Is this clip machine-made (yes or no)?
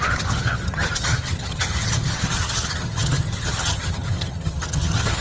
yes